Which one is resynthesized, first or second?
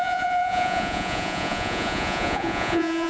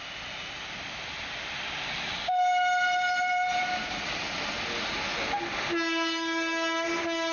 first